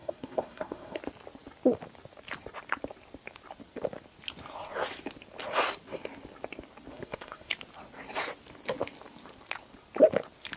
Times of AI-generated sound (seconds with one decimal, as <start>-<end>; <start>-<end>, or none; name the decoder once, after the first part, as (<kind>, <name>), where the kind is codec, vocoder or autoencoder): 0.0-1.0 (codec, SNAC); 6.9-7.5